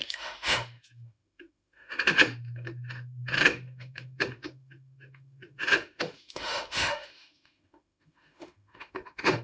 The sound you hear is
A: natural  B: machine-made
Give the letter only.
B